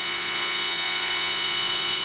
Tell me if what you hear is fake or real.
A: fake